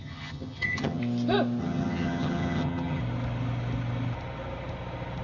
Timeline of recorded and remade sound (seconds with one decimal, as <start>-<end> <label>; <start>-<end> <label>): 0.0-1.0 remade; 1.0-1.6 recorded; 1.6-3.0 remade; 3.0-5.2 recorded